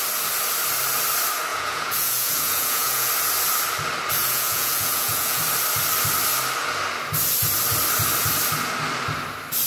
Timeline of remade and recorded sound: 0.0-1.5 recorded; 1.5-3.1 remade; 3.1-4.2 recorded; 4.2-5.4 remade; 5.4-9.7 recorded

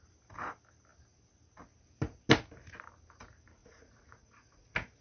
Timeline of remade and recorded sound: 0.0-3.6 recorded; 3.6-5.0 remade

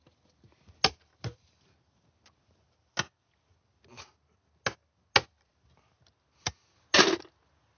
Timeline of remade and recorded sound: 0.0-7.8 recorded

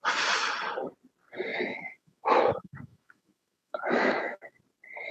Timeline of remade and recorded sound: 0.0-1.5 recorded; 1.5-4.6 remade; 4.6-5.1 recorded

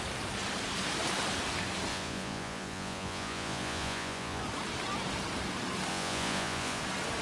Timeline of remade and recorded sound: 0.0-1.9 recorded; 1.9-4.4 remade; 4.4-5.9 recorded; 5.9-6.8 remade; 6.8-7.2 recorded